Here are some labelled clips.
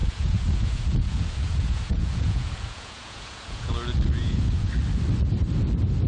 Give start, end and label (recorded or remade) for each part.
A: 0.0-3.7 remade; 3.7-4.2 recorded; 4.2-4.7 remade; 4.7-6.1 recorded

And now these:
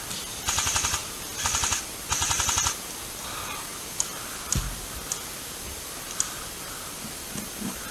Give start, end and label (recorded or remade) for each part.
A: 0.0-7.9 recorded

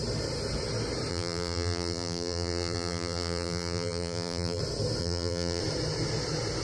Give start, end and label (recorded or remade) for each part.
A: 0.0-1.1 recorded; 1.1-4.6 remade; 4.6-5.0 recorded; 5.0-5.6 remade; 5.6-6.6 recorded

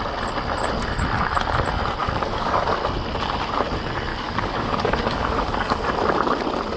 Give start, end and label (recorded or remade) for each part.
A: 0.0-2.0 recorded; 2.0-2.7 remade; 2.7-4.1 recorded; 4.1-5.9 remade; 5.9-6.8 recorded